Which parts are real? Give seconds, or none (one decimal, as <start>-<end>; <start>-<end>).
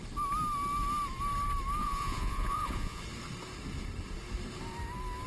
0.0-1.8; 3.0-5.3